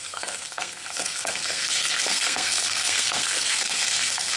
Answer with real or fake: fake